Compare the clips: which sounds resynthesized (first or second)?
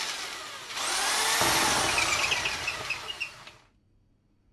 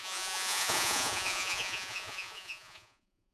second